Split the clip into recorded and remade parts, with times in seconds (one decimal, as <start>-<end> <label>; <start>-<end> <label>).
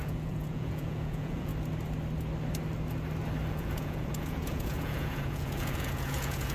0.0-1.5 remade; 1.5-3.5 recorded; 3.5-6.5 remade